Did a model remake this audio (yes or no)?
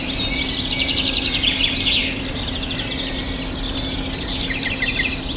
no